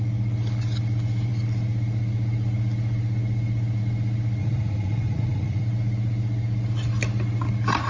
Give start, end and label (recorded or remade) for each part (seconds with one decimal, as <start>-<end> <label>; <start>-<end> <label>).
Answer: 0.0-4.4 recorded; 4.4-5.6 remade; 5.6-7.9 recorded